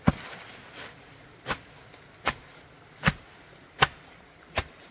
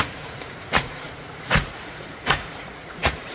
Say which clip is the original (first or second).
first